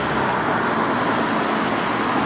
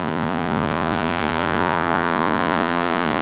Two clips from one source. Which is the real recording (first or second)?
first